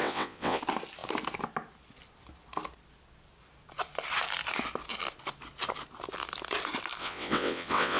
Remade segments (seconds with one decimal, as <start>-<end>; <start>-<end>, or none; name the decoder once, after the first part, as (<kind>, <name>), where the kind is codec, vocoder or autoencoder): 0.0-0.6 (vocoder, WaveNeXt); 7.0-8.0